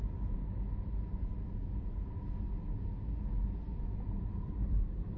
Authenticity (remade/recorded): recorded